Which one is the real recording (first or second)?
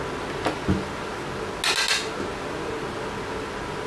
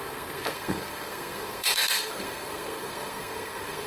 first